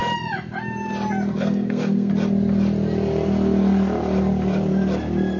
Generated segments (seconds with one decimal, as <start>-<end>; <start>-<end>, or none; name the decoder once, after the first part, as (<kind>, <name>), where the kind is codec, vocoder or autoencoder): 1.4-2.1 (codec, SNAC)